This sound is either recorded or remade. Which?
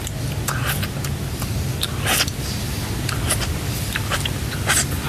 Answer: recorded